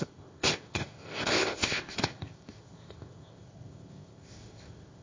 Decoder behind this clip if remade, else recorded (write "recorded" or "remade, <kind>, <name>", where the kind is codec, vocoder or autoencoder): remade, codec, ZipCodec